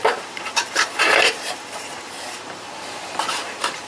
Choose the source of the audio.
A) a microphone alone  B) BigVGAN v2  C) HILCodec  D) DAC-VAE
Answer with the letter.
B